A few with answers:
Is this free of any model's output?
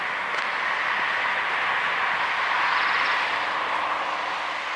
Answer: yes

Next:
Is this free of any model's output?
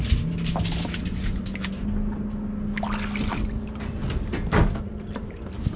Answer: yes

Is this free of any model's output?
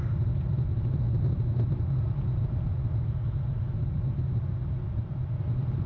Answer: yes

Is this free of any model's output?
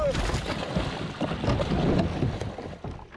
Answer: yes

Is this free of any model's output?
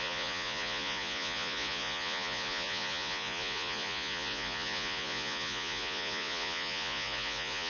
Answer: no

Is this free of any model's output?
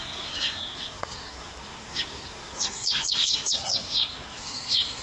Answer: no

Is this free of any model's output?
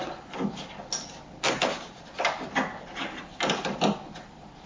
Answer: yes